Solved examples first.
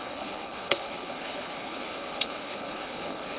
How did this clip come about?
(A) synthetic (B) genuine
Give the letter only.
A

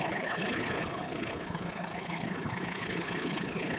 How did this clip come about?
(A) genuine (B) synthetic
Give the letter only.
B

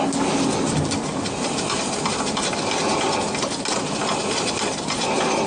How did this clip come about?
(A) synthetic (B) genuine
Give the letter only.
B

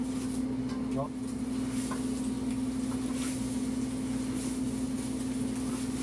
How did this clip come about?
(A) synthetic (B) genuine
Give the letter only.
B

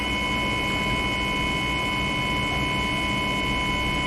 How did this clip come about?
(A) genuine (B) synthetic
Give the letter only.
A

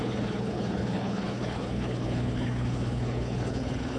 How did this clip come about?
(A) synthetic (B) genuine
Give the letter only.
A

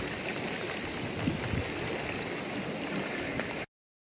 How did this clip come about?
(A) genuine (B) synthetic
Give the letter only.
A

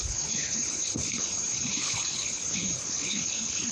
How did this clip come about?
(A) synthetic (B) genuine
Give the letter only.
A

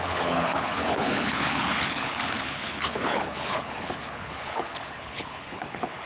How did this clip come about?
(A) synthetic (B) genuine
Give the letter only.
A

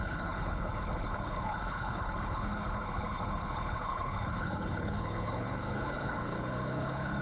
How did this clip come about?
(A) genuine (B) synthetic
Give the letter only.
B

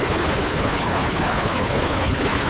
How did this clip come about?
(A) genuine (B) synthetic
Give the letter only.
B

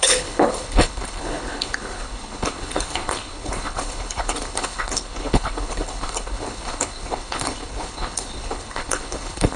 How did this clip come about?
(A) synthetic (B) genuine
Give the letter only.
A